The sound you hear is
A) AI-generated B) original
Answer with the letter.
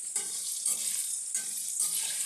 A